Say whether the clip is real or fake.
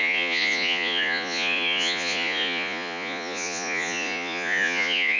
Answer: fake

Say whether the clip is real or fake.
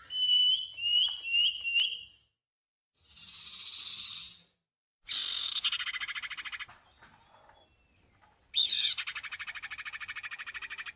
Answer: real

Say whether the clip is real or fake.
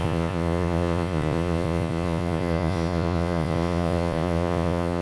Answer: fake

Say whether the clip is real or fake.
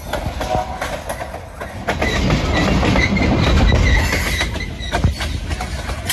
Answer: real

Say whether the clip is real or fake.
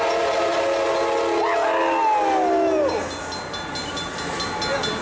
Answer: real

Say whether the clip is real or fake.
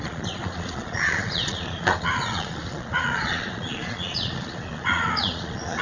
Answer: fake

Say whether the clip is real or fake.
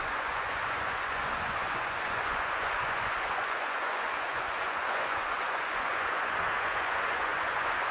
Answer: fake